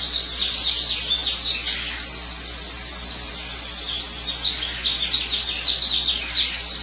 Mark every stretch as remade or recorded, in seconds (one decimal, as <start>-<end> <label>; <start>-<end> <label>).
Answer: 0.0-6.8 recorded